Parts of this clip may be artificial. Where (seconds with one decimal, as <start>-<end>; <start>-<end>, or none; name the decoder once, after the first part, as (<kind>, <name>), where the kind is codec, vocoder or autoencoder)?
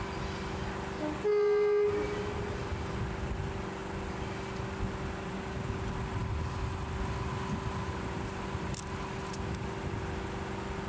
none